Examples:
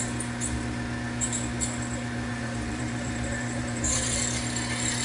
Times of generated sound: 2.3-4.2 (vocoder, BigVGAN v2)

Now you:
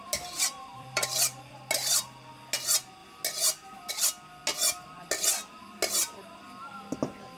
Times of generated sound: 0.7-1.5 (vocoder, BigVGAN v2)

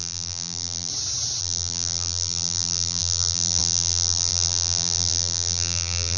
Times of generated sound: 0.0-0.9 (vocoder, BigVGAN v2); 1.4-6.2

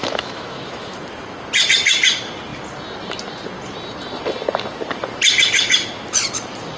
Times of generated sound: 0.0-1.0 (autoencoder, DAC-VAE)

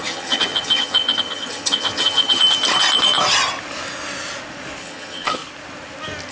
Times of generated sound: 0.0-2.4 (vocoder, HiFi-GAN); 4.8-5.4